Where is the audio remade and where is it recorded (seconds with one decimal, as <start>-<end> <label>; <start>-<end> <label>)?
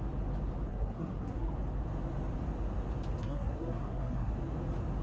0.0-0.7 recorded; 0.7-1.5 remade; 1.5-3.2 recorded; 3.2-4.3 remade; 4.3-5.0 recorded